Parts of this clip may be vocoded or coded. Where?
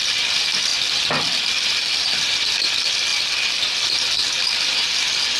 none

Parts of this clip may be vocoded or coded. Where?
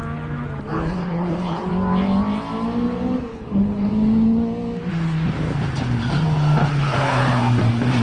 0.7-1.7; 3.3-3.9; 6.6-7.4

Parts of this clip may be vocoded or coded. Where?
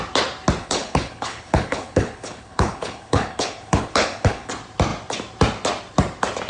0.6-4.5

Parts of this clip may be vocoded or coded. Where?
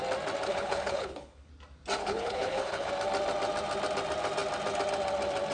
0.5-1.5; 2.0-2.9